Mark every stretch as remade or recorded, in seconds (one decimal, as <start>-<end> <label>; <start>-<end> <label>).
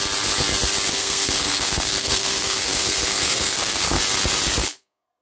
0.0-0.9 recorded; 0.9-4.0 remade; 4.0-4.6 recorded; 4.6-5.2 remade